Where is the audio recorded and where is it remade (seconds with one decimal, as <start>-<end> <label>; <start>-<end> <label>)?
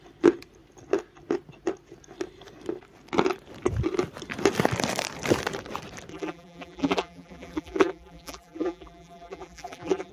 0.0-6.1 recorded; 6.1-10.1 remade